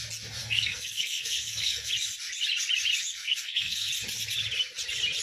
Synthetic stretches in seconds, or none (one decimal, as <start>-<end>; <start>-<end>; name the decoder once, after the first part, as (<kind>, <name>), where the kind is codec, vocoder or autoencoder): 0.4-1.9 (codec, SNAC); 3.1-3.9